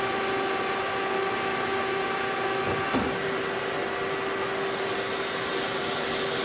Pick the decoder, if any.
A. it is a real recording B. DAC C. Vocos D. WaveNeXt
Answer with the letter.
A